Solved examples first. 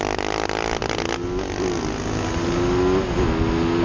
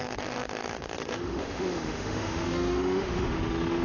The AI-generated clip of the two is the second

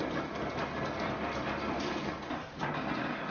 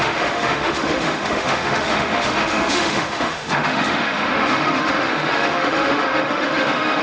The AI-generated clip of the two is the second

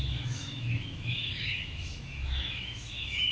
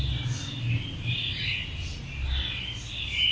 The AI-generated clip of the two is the first